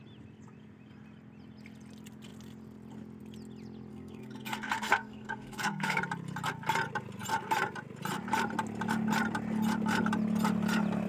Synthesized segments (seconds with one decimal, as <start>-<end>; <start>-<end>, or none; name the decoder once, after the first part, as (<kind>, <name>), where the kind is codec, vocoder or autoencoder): 3.9-6.0 (codec, SNAC)